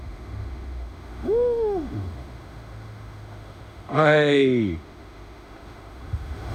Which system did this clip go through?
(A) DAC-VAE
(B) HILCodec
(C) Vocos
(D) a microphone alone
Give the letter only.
A